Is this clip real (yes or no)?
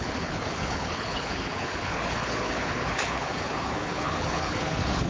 no